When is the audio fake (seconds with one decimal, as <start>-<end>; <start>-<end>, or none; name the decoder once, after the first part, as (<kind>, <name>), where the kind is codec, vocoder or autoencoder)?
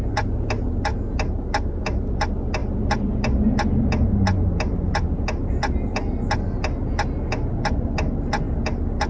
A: none